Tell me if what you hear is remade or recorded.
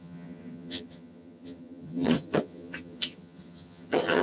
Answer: remade